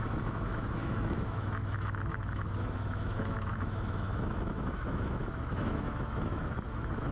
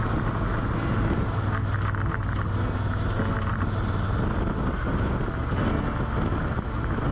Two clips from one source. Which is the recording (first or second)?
second